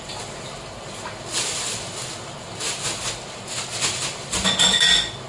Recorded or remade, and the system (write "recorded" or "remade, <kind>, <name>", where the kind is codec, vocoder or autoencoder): recorded